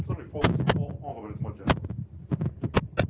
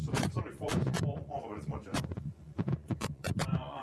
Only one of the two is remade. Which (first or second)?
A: second